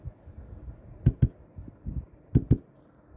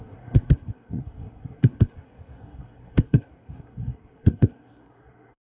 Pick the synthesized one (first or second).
second